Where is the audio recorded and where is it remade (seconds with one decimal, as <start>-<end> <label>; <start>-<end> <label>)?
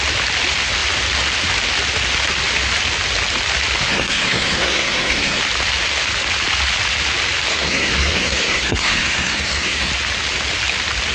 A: 0.0-3.9 recorded; 3.9-5.4 remade; 5.4-7.5 recorded; 7.5-9.9 remade; 9.9-11.1 recorded